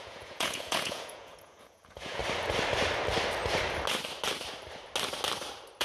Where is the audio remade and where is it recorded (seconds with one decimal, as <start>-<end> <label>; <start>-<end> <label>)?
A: 0.0-2.2 remade; 2.2-5.8 recorded